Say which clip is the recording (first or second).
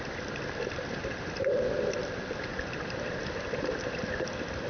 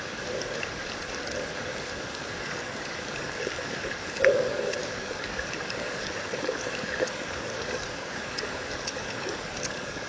first